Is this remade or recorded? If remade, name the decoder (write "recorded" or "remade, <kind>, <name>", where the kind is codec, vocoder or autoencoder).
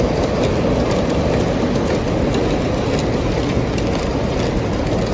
recorded